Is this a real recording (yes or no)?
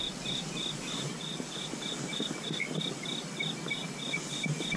yes